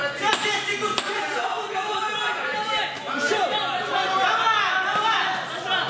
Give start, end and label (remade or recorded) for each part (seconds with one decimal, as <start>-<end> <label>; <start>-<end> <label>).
0.0-5.9 recorded